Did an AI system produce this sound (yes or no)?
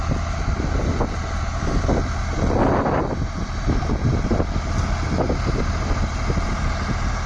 no